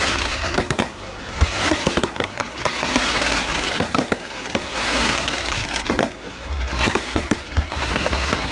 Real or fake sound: fake